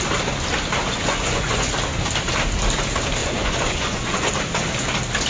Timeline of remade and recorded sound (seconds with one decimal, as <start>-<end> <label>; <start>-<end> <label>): 0.0-0.9 recorded; 0.9-1.7 remade; 1.7-3.2 recorded; 3.2-4.3 remade; 4.3-5.3 recorded